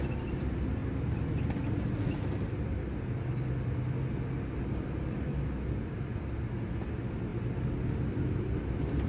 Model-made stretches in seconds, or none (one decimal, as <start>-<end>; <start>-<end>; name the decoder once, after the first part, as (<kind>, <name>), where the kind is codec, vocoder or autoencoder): none